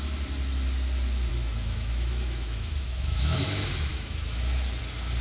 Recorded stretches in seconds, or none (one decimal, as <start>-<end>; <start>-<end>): 0.0-1.3; 3.4-3.9; 4.8-5.2